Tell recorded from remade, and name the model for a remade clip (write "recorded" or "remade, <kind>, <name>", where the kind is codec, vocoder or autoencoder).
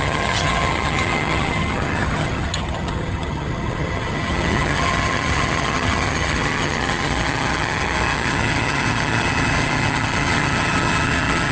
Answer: remade, vocoder, HiFi-GAN